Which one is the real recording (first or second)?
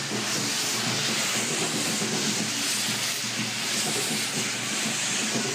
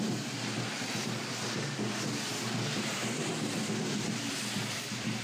first